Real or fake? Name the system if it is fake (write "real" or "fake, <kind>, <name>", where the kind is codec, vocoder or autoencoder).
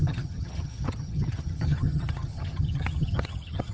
fake, vocoder, HiFi-GAN